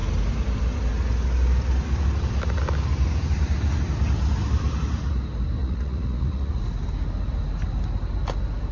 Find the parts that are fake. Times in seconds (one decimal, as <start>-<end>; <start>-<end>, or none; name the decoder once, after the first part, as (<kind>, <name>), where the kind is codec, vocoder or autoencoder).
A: 5.6-6.6 (vocoder, Vocos)